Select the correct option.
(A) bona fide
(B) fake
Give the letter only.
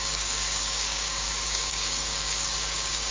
B